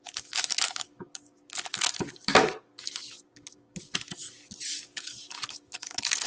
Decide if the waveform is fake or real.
fake